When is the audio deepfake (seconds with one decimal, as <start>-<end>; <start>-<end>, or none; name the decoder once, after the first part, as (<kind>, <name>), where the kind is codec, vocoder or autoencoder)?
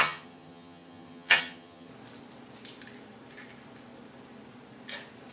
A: 0.0-1.9 (vocoder, HiFi-GAN)